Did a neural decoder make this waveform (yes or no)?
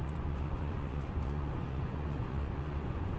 yes